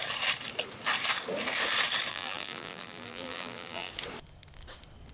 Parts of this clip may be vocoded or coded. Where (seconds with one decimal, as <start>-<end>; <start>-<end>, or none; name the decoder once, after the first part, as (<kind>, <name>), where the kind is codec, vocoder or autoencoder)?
2.1-3.9 (vocoder, BigVGAN v2)